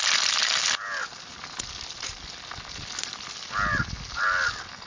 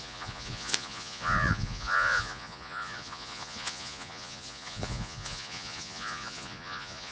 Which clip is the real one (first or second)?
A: first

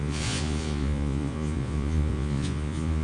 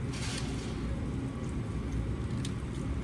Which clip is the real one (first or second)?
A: second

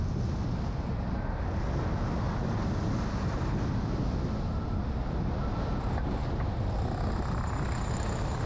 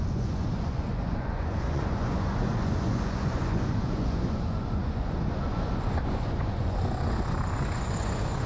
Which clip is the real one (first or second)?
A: first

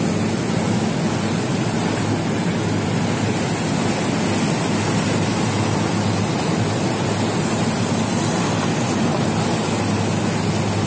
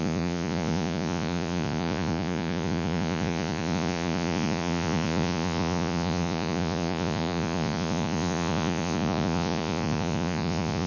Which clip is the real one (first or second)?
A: first